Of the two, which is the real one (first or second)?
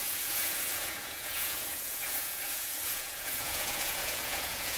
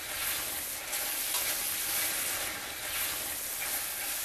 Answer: second